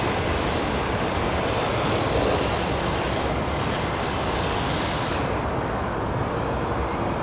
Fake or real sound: real